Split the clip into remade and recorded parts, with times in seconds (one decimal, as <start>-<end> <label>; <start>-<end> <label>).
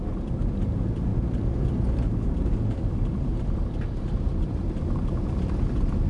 0.0-1.1 recorded; 1.1-4.8 remade; 4.8-6.1 recorded